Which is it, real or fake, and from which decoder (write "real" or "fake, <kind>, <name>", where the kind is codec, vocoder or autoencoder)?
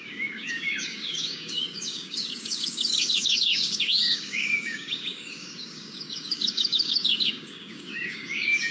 fake, codec, DAC